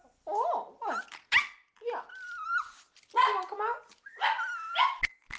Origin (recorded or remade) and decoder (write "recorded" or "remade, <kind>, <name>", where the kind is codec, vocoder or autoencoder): recorded